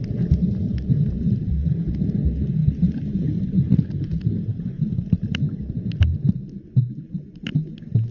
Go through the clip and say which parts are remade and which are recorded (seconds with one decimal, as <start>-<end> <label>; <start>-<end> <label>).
0.0-8.1 recorded